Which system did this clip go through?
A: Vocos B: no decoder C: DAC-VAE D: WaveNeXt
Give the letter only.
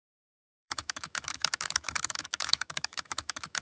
C